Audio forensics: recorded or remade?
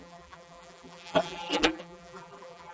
remade